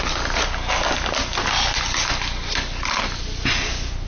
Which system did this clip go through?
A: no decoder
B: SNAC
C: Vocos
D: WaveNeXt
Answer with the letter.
A